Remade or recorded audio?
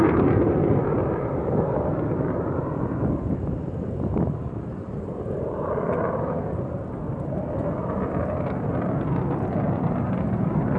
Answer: remade